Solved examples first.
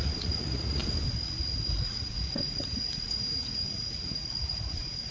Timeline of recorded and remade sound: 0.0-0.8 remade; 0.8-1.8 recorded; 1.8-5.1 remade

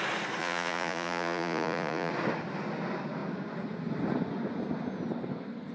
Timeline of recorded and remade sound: 0.0-0.4 recorded; 0.4-2.1 remade; 2.1-5.7 recorded

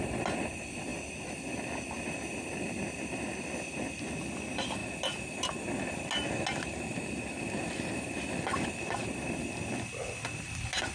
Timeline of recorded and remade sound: 0.0-10.9 recorded